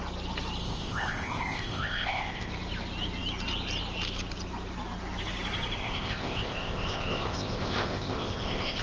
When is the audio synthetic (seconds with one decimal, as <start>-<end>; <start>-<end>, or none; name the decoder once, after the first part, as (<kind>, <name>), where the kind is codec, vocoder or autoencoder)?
0.6-2.5 (codec, ZipCodec); 5.8-8.8